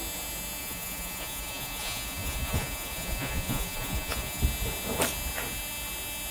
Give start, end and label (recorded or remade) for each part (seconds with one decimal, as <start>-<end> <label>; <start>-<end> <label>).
0.0-0.6 recorded; 0.6-4.4 remade; 4.4-6.3 recorded